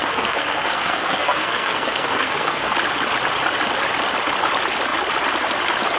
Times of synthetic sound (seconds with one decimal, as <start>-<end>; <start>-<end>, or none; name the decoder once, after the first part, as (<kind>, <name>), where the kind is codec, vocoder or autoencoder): 0.0-2.7 (codec, SNAC)